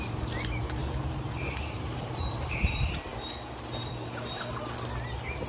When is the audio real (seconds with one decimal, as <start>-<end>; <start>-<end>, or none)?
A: 0.0-0.8; 2.6-5.5